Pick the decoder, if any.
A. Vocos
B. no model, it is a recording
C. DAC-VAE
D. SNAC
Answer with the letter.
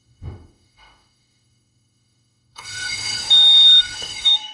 C